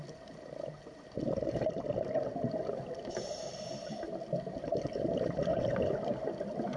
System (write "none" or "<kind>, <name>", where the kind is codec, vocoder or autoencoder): vocoder, BigVGAN v2